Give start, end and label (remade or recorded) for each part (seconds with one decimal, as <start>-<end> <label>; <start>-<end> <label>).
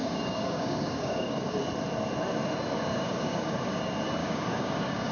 0.0-1.5 remade; 1.5-2.9 recorded; 2.9-3.8 remade; 3.8-4.2 recorded; 4.2-5.1 remade